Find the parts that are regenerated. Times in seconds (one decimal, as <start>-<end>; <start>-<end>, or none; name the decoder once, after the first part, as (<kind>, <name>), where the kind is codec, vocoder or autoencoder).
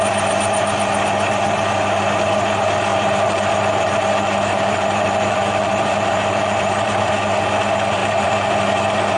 2.9-7.1 (vocoder, BigVGAN v2); 8.0-8.5